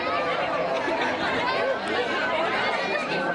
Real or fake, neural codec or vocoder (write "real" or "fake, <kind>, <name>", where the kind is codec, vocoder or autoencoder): real